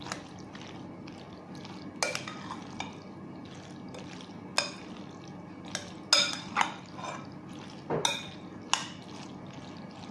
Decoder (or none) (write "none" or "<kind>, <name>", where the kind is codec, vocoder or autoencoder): none